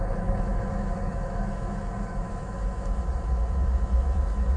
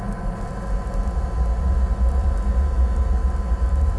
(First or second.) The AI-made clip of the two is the first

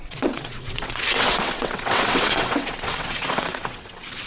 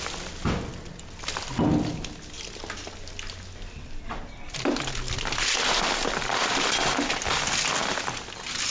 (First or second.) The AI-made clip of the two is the first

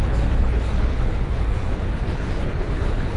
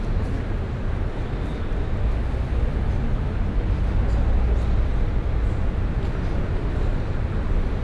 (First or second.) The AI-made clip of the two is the first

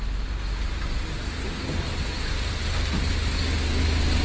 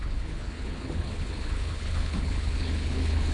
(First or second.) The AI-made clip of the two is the second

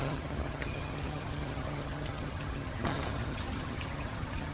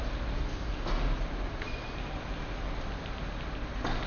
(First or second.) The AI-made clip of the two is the first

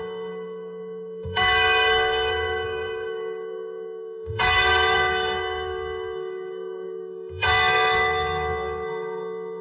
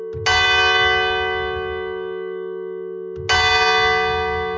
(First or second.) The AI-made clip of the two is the first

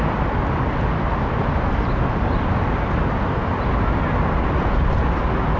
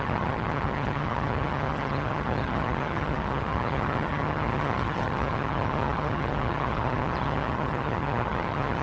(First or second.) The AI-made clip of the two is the second